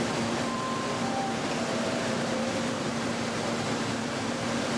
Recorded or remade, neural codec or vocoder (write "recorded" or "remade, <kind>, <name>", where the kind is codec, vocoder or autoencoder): remade, vocoder, BigVGAN v2